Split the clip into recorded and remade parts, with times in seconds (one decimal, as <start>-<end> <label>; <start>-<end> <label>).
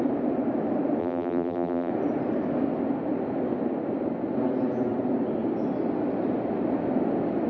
0.0-1.0 recorded; 1.0-1.9 remade; 1.9-7.5 recorded